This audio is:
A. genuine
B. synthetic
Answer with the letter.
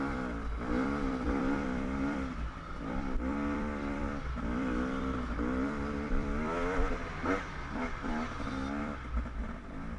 B